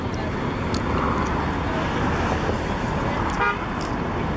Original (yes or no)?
yes